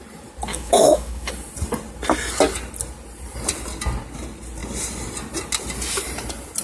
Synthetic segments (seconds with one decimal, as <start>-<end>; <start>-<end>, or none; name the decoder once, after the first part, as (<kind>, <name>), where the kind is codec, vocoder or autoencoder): 0.5-1.3 (autoencoder, DAC-VAE)